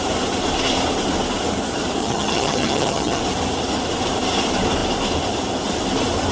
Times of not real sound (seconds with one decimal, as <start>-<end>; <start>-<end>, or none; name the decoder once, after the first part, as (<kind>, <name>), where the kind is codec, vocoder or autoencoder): 2.0-3.2 (vocoder, HiFi-GAN)